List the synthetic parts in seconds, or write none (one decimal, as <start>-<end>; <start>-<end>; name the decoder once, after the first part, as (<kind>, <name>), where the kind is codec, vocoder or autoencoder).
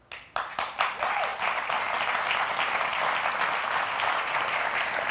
none